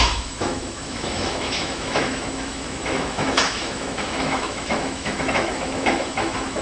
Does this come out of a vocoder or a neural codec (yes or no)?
yes